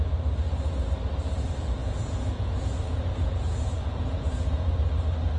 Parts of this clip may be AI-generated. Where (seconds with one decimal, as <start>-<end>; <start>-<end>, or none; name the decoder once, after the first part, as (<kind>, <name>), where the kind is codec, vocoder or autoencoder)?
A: 1.8-4.7 (vocoder, Vocos)